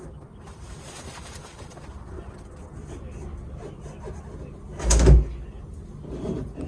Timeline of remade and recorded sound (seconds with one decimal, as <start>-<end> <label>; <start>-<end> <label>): 0.0-0.5 recorded; 0.5-1.8 remade; 1.8-6.7 recorded

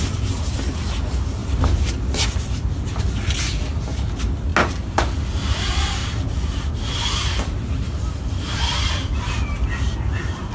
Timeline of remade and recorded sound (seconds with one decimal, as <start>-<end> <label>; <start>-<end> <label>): 0.0-1.4 recorded; 1.4-3.6 remade; 3.6-10.5 recorded

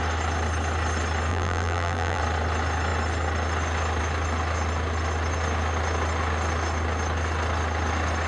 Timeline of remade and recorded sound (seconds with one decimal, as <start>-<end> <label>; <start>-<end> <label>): 0.0-1.3 recorded; 1.3-2.2 remade; 2.2-8.3 recorded

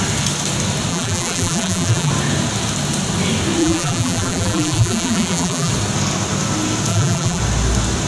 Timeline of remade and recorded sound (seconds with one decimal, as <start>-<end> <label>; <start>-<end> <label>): 0.0-0.9 recorded; 0.9-2.1 remade; 2.1-3.6 recorded; 3.6-5.7 remade; 5.7-6.9 recorded; 6.9-7.4 remade; 7.4-8.1 recorded

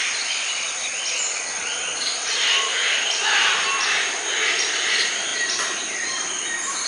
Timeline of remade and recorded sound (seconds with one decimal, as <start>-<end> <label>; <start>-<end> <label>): 0.0-5.3 recorded; 5.3-6.3 remade; 6.3-6.9 recorded

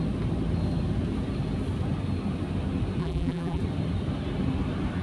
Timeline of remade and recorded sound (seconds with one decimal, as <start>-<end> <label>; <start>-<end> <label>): 0.0-3.0 recorded; 3.0-3.6 remade; 3.6-5.0 recorded

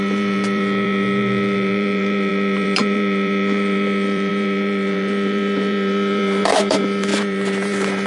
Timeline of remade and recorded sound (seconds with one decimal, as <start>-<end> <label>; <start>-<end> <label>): 0.0-8.1 remade

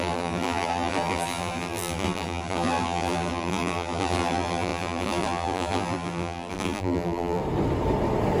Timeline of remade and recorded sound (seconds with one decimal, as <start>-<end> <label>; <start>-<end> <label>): 0.0-7.4 remade; 7.4-8.4 recorded